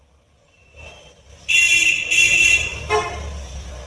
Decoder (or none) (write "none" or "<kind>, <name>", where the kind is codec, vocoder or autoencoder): none